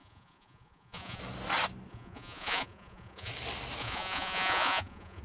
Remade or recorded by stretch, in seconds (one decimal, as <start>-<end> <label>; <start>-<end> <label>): 0.0-1.2 remade; 1.2-1.9 recorded; 1.9-3.3 remade; 3.3-3.8 recorded; 3.8-5.2 remade